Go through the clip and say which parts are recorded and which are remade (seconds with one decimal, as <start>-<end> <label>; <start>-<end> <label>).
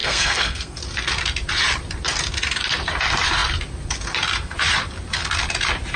0.0-0.8 remade; 0.8-6.0 recorded